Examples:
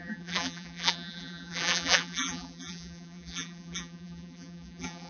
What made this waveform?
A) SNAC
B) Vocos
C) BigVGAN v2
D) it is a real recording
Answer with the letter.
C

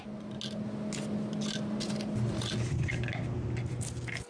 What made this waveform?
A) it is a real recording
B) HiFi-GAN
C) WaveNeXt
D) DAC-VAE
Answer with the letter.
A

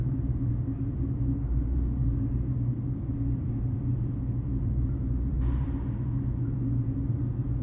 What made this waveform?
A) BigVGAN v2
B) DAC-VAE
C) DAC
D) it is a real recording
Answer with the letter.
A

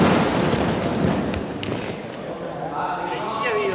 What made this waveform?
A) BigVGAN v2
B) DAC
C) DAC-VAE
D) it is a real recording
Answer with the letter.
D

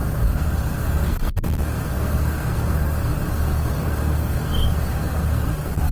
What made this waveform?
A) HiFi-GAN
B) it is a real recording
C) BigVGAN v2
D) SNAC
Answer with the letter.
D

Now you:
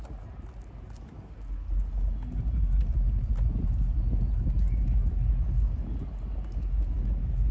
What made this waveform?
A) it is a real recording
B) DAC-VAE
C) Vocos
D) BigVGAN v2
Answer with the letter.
A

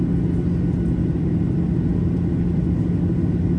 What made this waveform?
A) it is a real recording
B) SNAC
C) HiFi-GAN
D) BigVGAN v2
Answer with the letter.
A